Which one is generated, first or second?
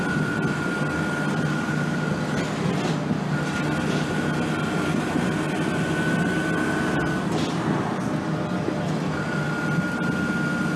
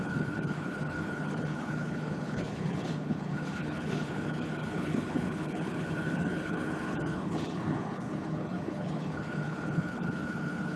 second